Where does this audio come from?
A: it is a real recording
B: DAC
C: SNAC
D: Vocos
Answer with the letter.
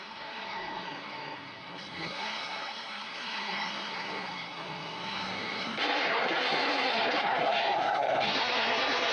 C